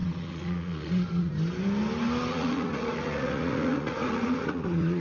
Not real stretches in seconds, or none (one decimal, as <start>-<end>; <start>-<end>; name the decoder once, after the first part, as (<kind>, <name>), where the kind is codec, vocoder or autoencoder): 0.0-1.3 (vocoder, Vocos); 2.3-5.0